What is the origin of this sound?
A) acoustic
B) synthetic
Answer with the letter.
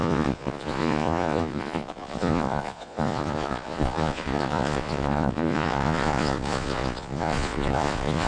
B